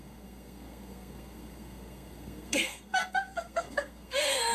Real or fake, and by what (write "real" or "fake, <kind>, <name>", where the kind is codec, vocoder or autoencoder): fake, codec, SNAC